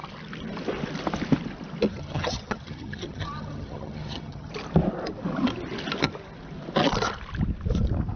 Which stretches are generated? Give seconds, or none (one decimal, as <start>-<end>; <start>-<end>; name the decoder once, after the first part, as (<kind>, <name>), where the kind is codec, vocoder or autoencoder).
1.9-4.5 (vocoder, HiFi-GAN)